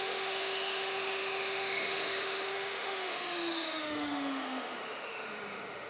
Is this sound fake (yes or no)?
yes